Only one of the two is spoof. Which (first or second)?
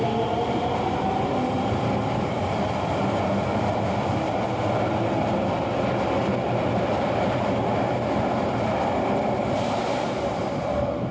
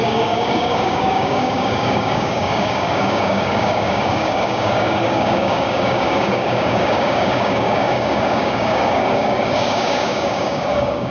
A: second